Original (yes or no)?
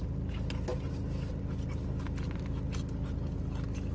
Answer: yes